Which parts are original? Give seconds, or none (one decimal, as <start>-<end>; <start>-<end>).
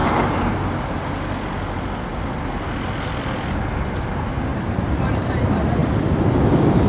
0.5-4.5; 5.3-5.8; 6.3-6.9